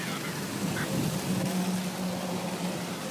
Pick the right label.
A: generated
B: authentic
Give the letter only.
B